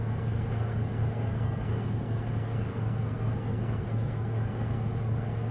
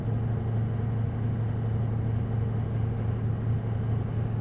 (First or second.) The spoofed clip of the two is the first